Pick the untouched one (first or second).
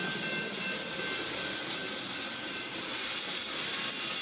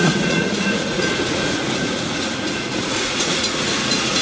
first